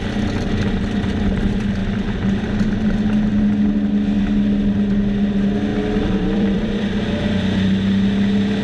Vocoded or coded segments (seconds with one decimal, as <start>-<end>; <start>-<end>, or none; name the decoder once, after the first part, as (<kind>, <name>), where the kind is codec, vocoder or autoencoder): 5.7-6.9 (vocoder, BigVGAN v2)